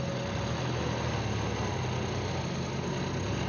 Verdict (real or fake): real